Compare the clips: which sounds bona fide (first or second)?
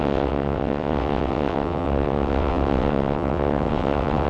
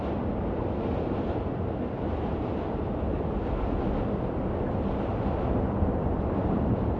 second